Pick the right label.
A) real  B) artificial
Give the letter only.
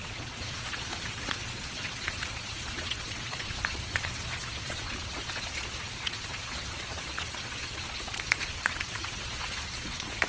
B